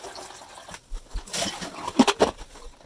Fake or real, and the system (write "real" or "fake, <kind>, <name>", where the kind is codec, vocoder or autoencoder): real